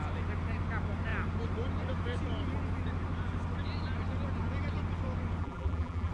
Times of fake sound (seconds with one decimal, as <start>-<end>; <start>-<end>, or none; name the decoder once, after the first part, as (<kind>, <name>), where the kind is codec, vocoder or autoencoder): 5.4-6.1 (vocoder, BigVGAN v2)